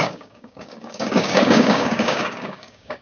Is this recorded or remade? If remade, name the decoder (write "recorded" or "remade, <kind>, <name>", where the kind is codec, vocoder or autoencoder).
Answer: remade, codec, DAC